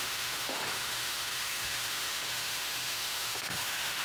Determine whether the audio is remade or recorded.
remade